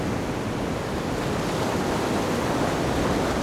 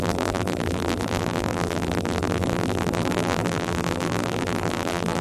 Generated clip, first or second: second